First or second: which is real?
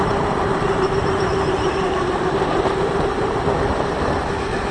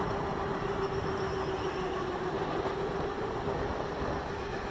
second